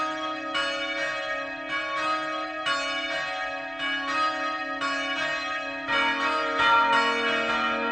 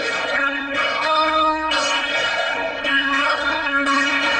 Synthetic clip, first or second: second